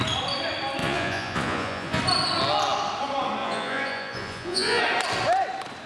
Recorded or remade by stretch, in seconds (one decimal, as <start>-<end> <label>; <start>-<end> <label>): 0.0-0.8 recorded; 0.8-2.0 remade; 2.0-3.4 recorded; 3.4-4.8 remade; 4.8-5.9 recorded